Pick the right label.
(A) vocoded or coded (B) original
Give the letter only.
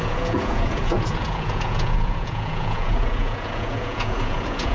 A